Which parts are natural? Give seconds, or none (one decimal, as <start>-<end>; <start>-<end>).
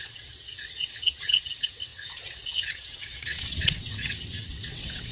none